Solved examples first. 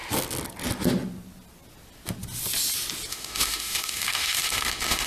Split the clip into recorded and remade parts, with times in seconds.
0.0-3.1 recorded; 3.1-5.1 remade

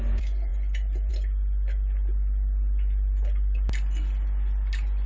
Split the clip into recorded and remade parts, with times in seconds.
0.0-5.1 recorded

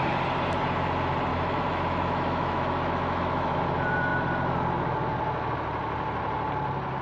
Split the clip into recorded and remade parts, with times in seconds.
0.0-1.3 recorded; 1.3-3.6 remade; 3.6-7.0 recorded

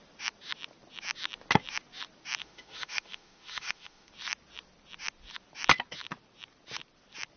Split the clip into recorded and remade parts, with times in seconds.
0.0-2.4 recorded; 2.4-4.1 remade; 4.1-7.4 recorded

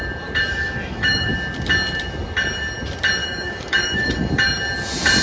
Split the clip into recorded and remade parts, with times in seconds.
0.0-0.5 recorded; 0.5-1.3 remade; 1.3-3.2 recorded; 3.2-4.3 remade; 4.3-5.2 recorded

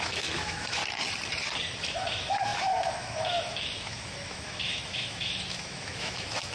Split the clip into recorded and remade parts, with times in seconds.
0.0-0.8 remade; 0.8-1.8 recorded; 1.8-6.5 remade